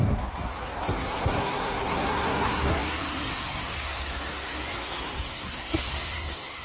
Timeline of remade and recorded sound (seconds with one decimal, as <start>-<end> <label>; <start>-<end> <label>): 0.0-6.6 remade

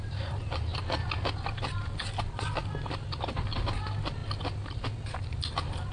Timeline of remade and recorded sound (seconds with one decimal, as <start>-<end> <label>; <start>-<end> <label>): 0.0-5.9 recorded

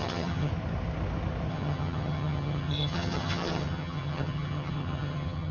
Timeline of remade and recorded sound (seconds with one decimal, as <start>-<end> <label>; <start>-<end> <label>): 0.0-0.5 remade; 0.5-1.5 recorded; 1.5-5.5 remade

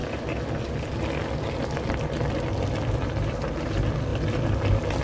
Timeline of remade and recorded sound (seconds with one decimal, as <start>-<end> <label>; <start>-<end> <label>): 0.0-5.0 recorded

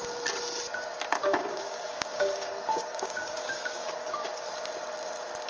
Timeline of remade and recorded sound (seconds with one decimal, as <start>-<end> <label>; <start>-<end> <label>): 0.0-1.2 recorded; 1.2-4.5 remade; 4.5-5.5 recorded